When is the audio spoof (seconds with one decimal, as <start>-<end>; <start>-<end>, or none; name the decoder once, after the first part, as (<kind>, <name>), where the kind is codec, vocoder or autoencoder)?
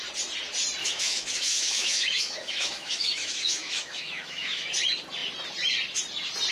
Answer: 0.8-4.7 (autoencoder, DAC-VAE)